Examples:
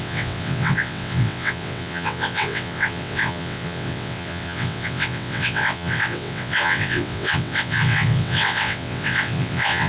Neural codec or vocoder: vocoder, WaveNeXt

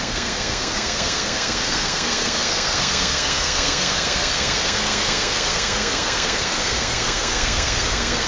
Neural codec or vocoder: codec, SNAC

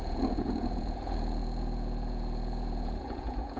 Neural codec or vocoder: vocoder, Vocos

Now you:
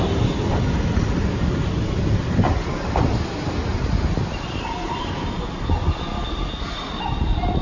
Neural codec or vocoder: none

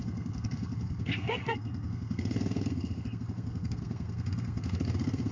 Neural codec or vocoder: codec, SNAC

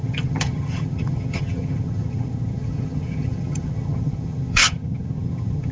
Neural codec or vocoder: vocoder, HiFi-GAN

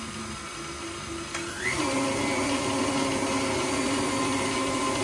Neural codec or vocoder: none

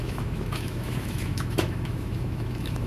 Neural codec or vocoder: autoencoder, DAC-VAE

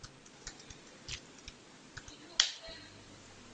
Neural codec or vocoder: none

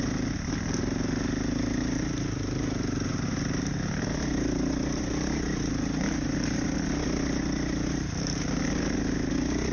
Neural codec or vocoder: none